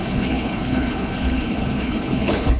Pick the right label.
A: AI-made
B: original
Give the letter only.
A